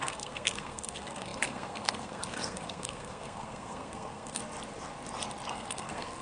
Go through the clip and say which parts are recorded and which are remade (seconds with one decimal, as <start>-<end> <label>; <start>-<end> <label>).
0.0-4.4 remade; 4.4-5.5 recorded; 5.5-6.2 remade